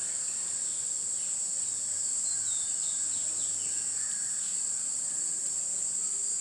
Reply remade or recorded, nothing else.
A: recorded